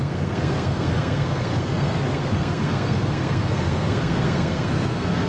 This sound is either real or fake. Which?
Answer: fake